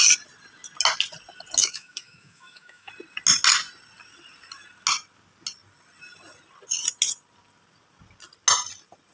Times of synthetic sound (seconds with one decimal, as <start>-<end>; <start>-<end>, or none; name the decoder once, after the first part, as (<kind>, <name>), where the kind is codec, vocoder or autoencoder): 1.6-2.9 (autoencoder, DAC-VAE)